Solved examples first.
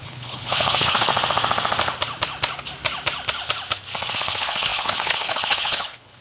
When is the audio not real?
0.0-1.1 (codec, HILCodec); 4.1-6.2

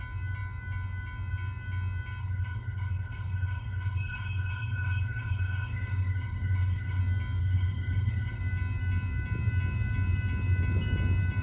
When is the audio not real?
2.2-7.0 (codec, HILCodec); 7.4-8.4

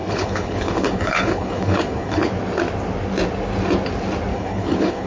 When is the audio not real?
0.0-2.3 (codec, HILCodec); 4.3-5.1

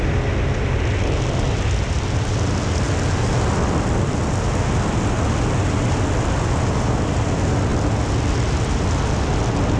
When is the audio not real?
none